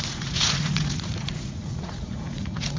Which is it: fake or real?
fake